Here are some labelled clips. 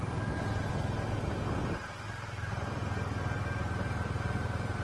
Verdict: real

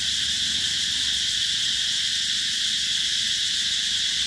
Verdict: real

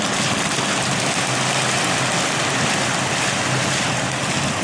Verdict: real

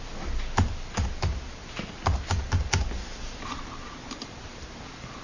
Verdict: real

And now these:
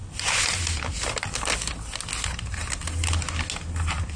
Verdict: real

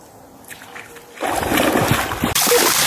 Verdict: real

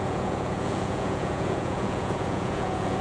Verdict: fake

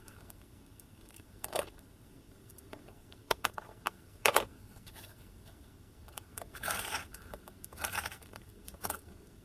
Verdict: fake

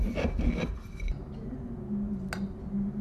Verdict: real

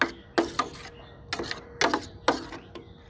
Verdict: real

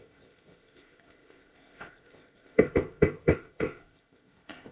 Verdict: fake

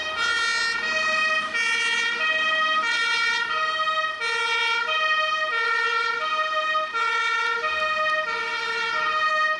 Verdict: real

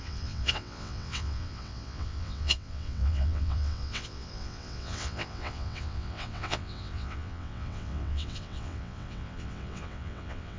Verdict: fake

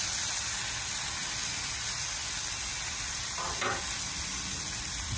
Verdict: real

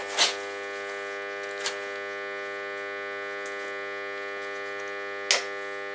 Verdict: real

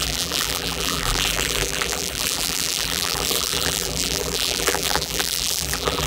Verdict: fake